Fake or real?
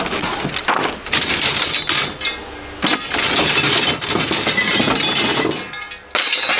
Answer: real